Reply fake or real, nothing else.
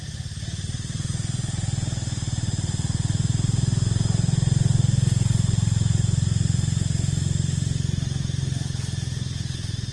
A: real